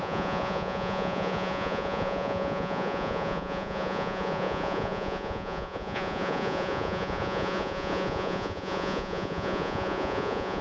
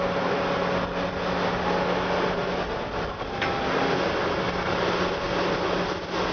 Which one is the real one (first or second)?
second